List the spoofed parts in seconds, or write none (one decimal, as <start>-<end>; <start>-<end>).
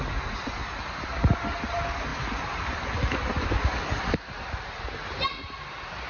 none